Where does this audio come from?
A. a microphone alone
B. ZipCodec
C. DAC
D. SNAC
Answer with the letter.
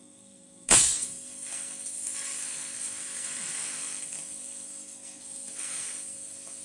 D